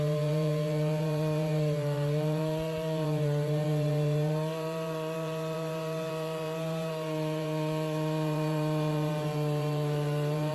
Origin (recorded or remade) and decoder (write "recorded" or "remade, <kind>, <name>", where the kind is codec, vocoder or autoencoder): remade, vocoder, BigVGAN v2